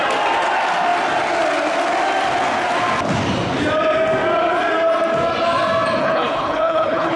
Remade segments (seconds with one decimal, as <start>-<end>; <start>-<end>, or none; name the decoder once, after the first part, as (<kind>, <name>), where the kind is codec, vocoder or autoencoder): 6.0-7.2 (codec, HILCodec)